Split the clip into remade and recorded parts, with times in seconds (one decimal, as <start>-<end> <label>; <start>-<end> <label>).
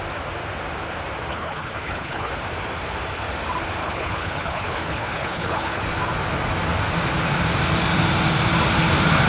0.0-1.3 recorded; 1.3-2.3 remade; 2.3-3.8 recorded; 3.8-5.8 remade; 5.8-9.3 recorded